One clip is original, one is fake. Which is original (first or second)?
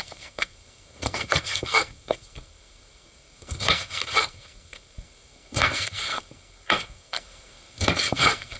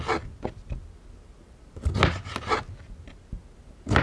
second